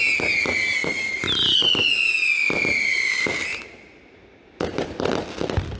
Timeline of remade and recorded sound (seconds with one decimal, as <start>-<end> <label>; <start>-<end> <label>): 0.0-5.8 recorded